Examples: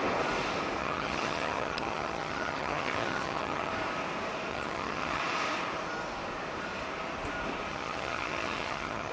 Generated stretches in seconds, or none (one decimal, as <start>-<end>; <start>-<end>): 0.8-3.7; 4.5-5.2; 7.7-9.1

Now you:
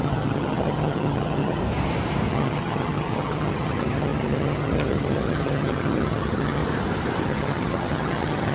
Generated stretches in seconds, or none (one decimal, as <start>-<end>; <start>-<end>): 0.0-1.6; 2.3-6.6; 7.2-8.5

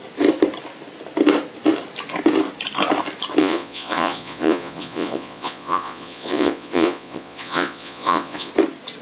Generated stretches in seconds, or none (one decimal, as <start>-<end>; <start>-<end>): 3.4-8.5